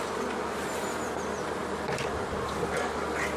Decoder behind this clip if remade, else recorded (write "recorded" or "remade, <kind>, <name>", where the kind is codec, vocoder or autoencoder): remade, vocoder, BigVGAN v2